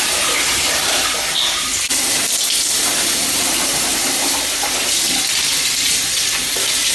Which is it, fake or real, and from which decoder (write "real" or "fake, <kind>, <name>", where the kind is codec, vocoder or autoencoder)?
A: fake, vocoder, BigVGAN v2